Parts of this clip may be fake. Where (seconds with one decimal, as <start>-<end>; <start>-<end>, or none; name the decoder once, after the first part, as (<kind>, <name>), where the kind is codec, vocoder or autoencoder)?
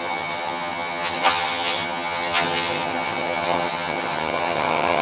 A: 0.0-5.0 (vocoder, HiFi-GAN)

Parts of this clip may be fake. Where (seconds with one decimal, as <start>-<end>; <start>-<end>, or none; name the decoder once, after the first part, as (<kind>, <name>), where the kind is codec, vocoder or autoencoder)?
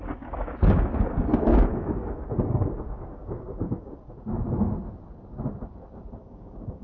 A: 0.0-3.9 (codec, DAC); 6.2-6.8